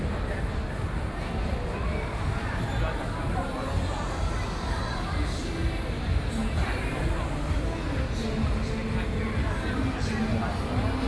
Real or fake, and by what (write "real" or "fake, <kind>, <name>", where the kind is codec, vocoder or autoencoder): real